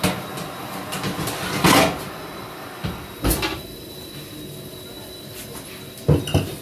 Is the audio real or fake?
real